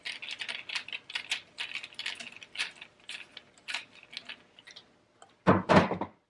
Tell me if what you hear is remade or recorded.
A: recorded